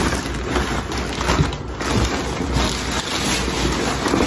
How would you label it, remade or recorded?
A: recorded